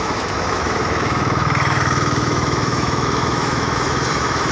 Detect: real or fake fake